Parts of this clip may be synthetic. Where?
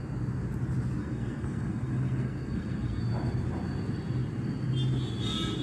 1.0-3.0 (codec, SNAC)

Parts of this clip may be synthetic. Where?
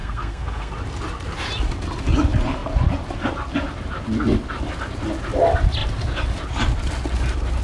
0.0-0.7 (codec, SNAC)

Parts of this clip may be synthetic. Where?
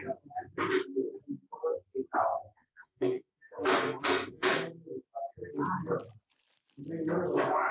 2.3-4.6 (codec, SNAC)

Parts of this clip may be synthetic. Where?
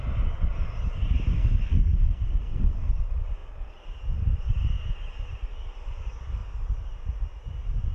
1.3-2.9 (codec, SNAC)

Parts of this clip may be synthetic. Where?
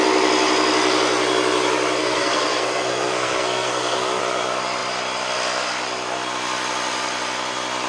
2.0-4.2 (codec, SNAC)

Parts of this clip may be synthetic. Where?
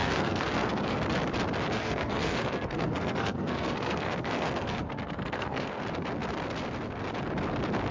0.0-1.0 (codec, SNAC); 1.7-5.8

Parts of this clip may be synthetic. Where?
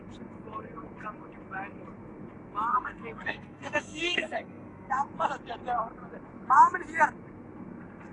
2.7-4.9 (codec, SNAC)